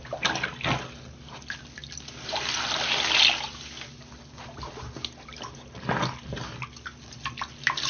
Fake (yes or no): no